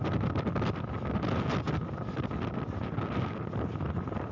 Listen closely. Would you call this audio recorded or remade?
recorded